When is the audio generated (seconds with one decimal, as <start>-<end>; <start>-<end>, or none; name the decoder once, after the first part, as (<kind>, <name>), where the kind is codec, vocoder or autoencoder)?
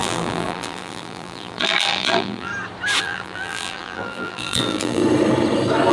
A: 0.0-2.5 (vocoder, BigVGAN v2); 3.0-5.0